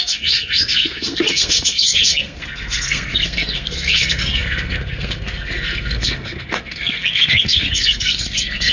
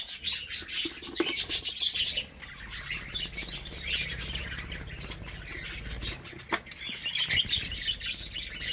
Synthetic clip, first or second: first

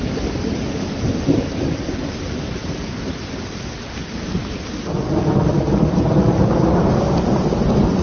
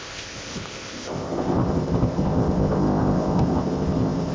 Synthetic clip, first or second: second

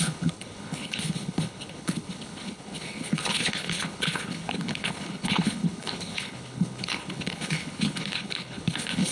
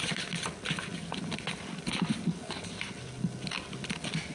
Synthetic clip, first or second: first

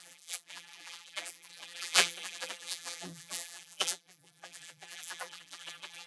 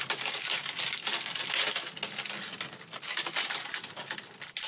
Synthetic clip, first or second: first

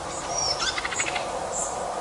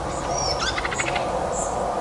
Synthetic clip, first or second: first